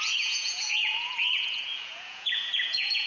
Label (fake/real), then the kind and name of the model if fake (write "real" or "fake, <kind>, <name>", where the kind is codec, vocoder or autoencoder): fake, vocoder, Vocos